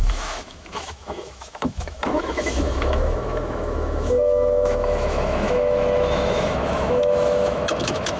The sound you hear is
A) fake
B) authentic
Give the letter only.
A